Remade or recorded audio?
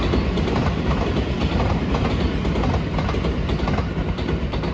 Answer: recorded